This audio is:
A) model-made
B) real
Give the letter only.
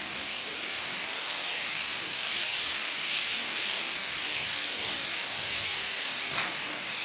A